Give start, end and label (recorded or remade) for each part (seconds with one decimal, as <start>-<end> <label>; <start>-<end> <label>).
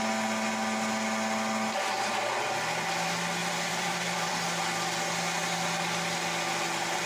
0.0-3.4 recorded; 3.4-4.3 remade; 4.3-7.1 recorded